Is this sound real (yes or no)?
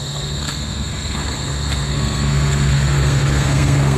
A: no